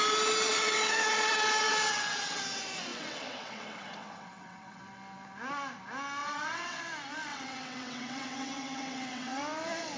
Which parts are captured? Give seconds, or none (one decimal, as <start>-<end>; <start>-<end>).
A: 0.0-0.5; 2.4-2.9; 4.8-6.2; 6.8-7.3; 9.4-10.0

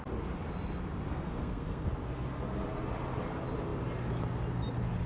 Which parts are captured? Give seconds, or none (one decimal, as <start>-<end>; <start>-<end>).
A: 0.0-1.1; 1.9-5.1

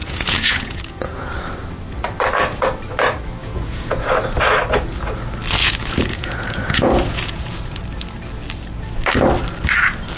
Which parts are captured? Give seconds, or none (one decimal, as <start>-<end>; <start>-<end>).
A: 1.3-3.4; 4.0-5.6; 7.8-10.2

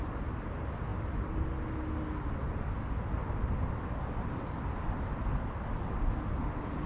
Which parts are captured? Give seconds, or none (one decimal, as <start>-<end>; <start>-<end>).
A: 0.0-6.9

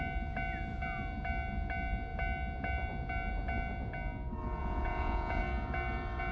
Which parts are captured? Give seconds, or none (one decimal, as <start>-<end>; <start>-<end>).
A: 0.0-4.6; 5.4-6.3

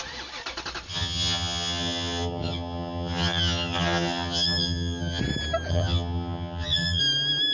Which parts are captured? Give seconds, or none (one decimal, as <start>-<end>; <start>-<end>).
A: 0.0-0.9; 5.2-5.7; 7.0-7.5